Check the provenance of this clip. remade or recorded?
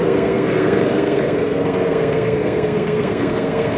remade